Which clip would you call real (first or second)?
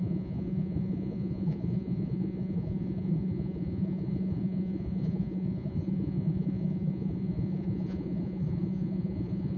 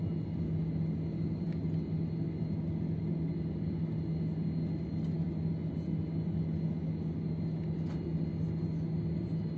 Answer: second